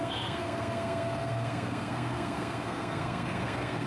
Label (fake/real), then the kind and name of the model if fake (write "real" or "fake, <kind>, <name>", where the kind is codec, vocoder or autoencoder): fake, codec, SNAC